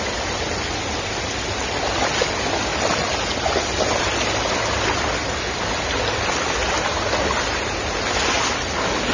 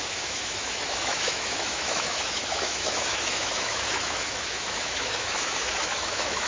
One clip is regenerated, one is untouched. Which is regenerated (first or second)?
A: second